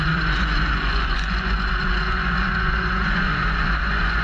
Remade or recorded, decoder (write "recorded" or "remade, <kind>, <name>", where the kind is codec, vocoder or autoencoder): remade, vocoder, Vocos